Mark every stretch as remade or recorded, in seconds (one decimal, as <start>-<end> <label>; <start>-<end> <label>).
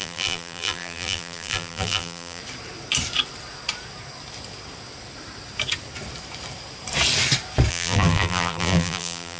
0.0-2.4 remade; 2.4-7.7 recorded; 7.7-9.4 remade